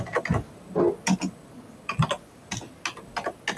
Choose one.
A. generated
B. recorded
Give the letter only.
B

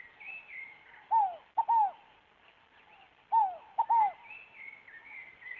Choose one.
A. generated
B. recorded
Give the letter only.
B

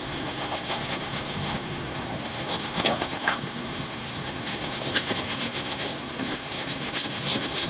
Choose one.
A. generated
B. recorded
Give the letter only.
A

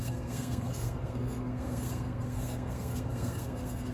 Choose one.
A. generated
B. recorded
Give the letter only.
A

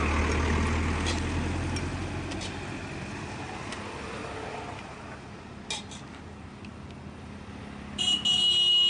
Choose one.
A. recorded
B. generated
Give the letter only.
A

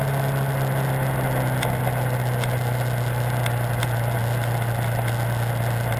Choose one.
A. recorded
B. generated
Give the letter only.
A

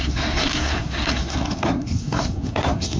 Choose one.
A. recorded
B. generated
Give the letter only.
B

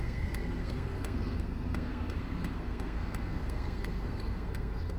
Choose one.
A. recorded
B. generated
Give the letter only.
B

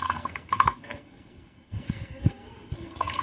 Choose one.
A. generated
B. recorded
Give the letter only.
A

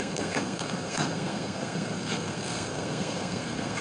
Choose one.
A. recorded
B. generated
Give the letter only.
B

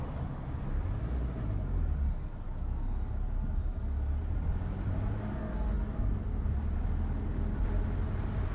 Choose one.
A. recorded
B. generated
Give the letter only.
A